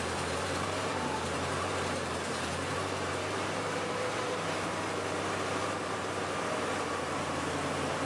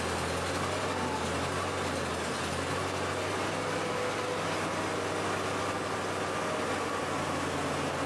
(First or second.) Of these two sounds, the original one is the second